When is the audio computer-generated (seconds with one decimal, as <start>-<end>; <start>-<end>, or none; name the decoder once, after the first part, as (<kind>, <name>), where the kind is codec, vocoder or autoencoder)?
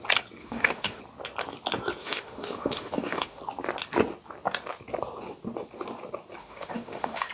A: 0.4-1.0 (autoencoder, DAC-VAE); 2.0-3.4; 6.4-7.3